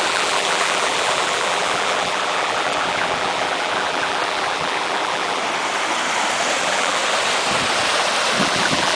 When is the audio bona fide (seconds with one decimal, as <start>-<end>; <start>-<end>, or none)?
5.4-6.6; 7.0-8.4